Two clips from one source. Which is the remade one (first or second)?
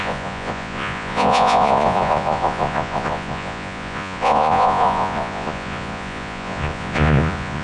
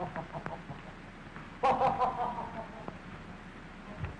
first